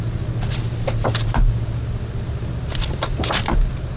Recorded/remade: recorded